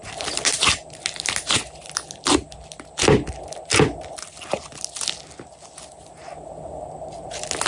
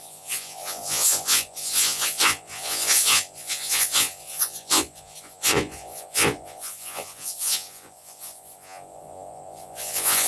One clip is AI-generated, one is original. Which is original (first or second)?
first